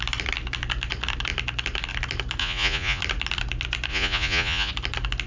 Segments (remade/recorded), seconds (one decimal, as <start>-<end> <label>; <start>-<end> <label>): 0.0-2.4 recorded; 2.4-3.0 remade; 3.0-3.9 recorded; 3.9-4.7 remade; 4.7-5.3 recorded